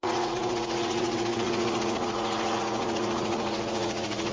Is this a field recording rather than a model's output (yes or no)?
no